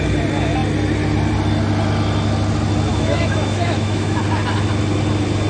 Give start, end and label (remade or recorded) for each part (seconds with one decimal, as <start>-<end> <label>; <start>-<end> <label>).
0.0-2.9 recorded; 2.9-4.2 remade; 4.2-5.5 recorded